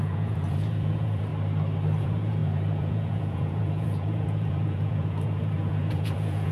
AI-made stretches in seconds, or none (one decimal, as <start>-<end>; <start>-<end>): 0.0-1.3; 2.0-6.5